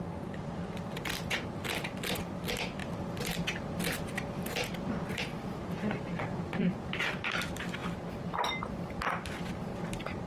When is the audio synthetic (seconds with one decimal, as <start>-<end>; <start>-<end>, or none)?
none